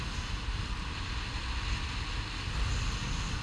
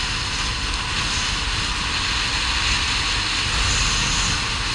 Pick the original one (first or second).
second